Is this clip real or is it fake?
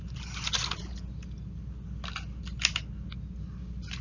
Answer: real